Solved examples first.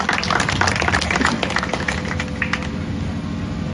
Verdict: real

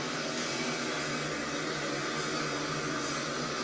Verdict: real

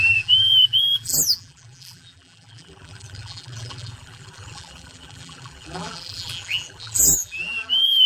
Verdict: fake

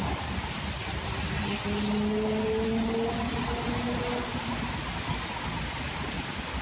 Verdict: real